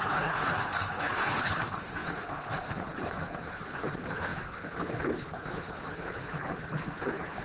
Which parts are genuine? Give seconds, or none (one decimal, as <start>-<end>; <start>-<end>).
none